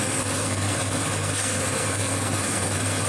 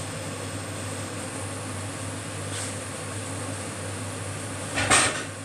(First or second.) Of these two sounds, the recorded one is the second